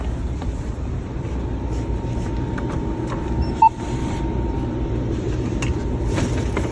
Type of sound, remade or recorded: remade